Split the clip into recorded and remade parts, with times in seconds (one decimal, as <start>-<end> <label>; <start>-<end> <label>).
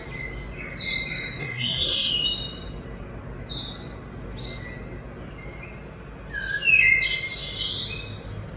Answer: 0.0-1.4 recorded; 1.4-2.1 remade; 2.1-8.6 recorded